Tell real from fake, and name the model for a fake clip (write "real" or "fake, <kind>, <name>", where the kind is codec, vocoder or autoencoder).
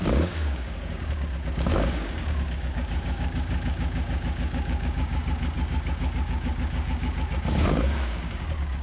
fake, codec, DAC